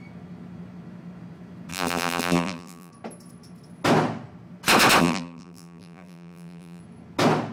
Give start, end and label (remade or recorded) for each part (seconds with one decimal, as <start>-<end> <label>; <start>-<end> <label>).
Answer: 0.0-1.7 recorded; 1.7-2.9 remade; 2.9-5.0 recorded; 5.0-6.8 remade; 6.8-7.5 recorded